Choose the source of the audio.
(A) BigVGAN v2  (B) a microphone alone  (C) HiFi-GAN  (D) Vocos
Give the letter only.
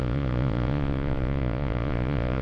D